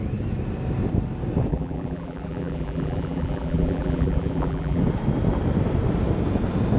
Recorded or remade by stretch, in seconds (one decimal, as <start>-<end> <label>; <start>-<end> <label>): 0.0-1.5 recorded; 1.5-4.8 remade; 4.8-6.8 recorded